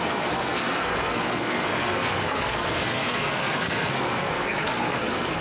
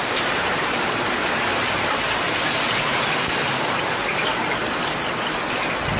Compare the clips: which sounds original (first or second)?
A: second